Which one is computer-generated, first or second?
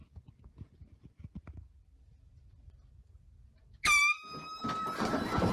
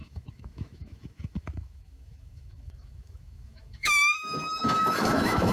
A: second